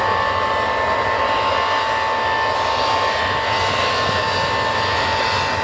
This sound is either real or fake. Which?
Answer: real